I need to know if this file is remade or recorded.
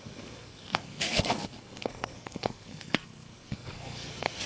remade